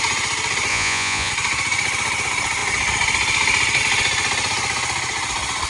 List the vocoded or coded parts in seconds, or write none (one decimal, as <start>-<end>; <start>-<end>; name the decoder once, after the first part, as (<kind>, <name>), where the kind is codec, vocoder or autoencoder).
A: 0.7-1.3 (vocoder, Vocos)